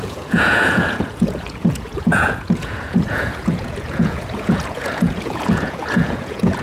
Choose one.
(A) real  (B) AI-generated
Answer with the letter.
B